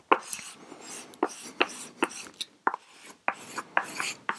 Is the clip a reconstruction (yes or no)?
no